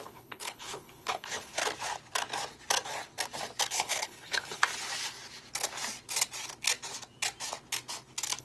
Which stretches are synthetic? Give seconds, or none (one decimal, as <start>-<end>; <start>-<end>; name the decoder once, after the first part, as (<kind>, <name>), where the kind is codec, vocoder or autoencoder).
0.0-1.6 (codec, HILCodec); 3.7-4.7